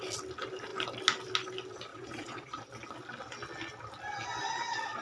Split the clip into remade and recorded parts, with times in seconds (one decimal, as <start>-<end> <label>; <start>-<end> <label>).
0.0-1.9 recorded; 1.9-2.6 remade; 2.6-5.0 recorded